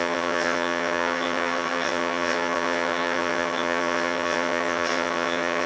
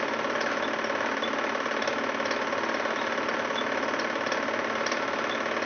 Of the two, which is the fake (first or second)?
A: first